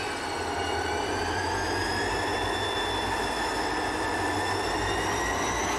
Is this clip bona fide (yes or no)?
yes